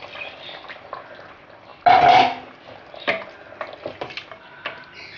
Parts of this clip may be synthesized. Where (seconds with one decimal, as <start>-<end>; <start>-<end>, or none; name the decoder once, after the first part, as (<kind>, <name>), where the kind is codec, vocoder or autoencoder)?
none